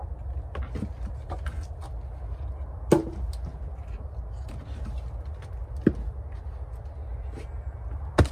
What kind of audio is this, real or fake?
real